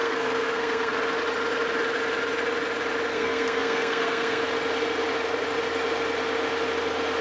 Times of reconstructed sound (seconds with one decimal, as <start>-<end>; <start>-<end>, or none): 0.0-0.9; 3.1-4.4